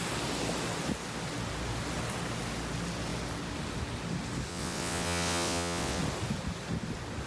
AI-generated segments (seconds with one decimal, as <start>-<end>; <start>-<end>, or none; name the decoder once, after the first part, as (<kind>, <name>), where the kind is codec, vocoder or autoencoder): 4.5-6.0 (vocoder, WaveNeXt)